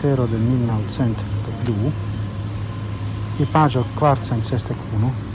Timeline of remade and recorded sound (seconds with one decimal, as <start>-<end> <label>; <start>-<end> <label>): 0.0-5.3 recorded